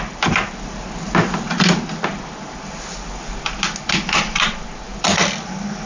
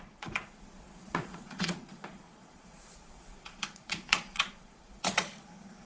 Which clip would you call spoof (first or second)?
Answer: second